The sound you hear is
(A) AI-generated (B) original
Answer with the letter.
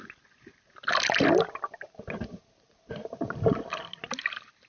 B